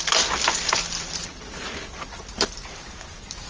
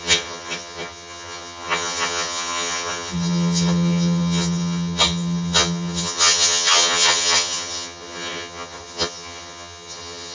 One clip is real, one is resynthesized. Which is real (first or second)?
first